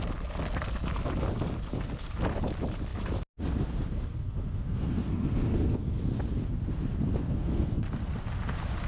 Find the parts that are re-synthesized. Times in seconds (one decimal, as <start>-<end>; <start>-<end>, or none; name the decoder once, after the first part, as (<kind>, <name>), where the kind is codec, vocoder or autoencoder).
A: 3.9-6.0 (codec, SNAC); 7.2-7.8